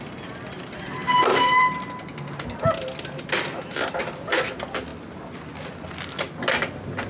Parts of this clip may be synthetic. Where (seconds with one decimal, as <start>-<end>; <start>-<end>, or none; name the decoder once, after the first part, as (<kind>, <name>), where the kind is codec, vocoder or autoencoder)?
none